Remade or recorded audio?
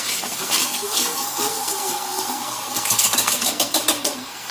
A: remade